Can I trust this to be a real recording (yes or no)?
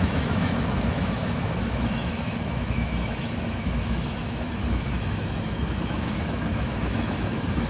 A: no